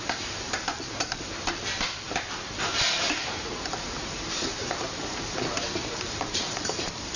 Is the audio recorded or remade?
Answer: remade